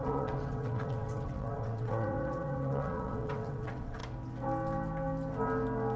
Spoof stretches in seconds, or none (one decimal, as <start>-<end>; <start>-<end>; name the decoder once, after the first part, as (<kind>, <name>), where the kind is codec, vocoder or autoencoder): 0.0-4.0 (vocoder, WaveNeXt)